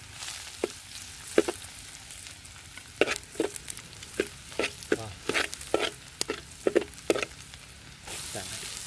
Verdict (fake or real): real